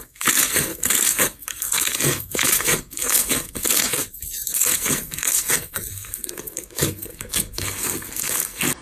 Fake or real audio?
fake